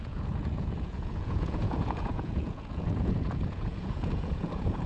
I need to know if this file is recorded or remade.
remade